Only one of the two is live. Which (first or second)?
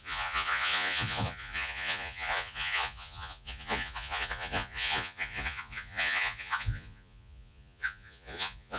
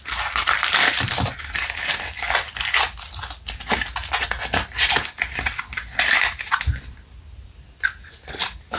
second